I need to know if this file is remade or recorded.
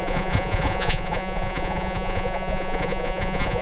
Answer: remade